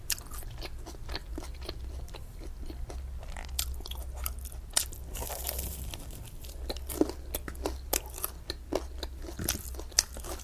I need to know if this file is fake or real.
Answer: real